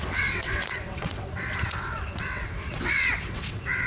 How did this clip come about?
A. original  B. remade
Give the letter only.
B